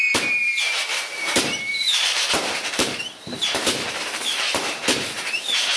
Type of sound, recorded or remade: remade